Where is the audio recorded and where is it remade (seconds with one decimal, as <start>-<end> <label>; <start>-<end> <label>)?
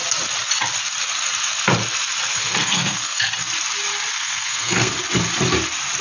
0.0-2.3 recorded; 2.3-3.3 remade; 3.3-4.1 recorded; 4.1-4.9 remade; 4.9-6.0 recorded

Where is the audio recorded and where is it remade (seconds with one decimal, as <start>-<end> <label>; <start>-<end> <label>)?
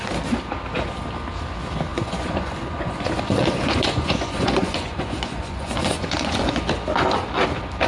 0.0-1.9 recorded; 1.9-6.6 remade; 6.6-7.9 recorded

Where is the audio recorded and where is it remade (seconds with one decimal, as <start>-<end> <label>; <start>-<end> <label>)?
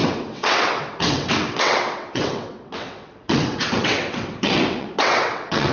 0.0-5.7 remade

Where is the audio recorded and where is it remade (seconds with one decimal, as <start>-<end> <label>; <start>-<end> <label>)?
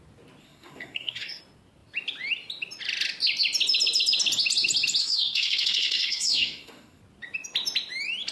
0.0-0.4 recorded; 0.4-1.4 remade; 1.4-5.0 recorded; 5.0-7.0 remade; 7.0-8.3 recorded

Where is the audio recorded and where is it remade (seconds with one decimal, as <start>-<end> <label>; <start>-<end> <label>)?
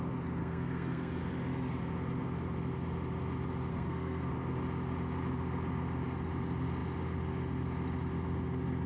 0.0-0.4 recorded; 0.4-1.2 remade; 1.2-3.7 recorded; 3.7-4.3 remade; 4.3-8.9 recorded